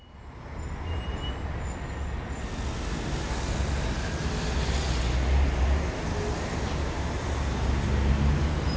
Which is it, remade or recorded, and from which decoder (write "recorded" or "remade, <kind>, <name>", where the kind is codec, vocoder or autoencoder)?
recorded